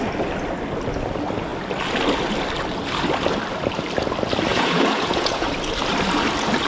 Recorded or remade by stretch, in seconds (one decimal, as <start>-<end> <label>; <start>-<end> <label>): 0.0-4.5 recorded; 4.5-5.5 remade; 5.5-6.7 recorded